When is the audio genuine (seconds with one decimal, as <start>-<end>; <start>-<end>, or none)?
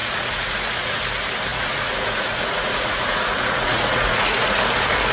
1.0-1.5; 4.6-5.1